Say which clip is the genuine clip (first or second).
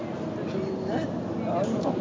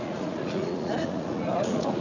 first